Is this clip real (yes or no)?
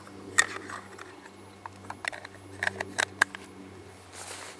yes